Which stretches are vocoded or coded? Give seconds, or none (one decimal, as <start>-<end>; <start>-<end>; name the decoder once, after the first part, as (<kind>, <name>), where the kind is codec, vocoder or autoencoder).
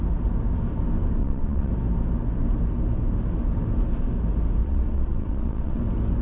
1.2-1.7 (vocoder, WaveNeXt); 4.6-5.8